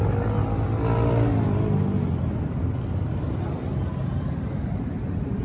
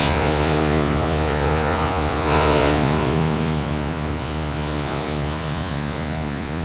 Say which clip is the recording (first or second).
first